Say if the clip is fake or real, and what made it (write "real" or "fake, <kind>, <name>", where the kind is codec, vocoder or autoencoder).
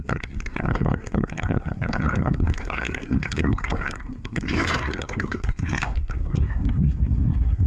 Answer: fake, codec, SNAC